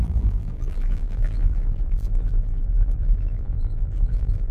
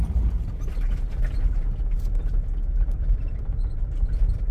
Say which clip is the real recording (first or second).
second